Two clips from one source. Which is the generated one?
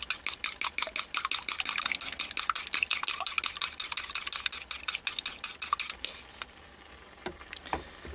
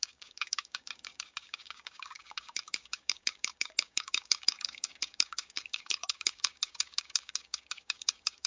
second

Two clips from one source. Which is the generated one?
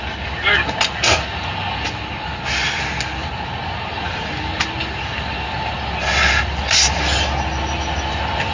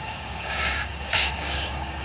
second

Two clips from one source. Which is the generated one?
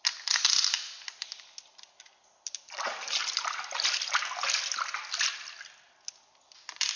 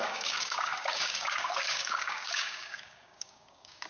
second